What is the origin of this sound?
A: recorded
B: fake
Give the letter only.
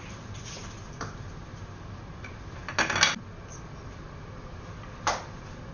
A